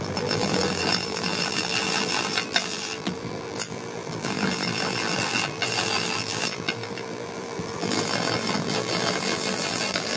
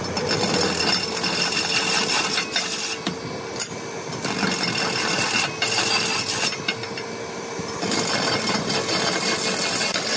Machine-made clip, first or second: first